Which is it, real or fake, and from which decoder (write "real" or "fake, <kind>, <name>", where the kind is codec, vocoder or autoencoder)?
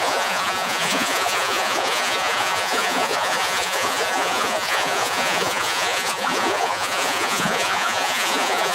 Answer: fake, vocoder, Vocos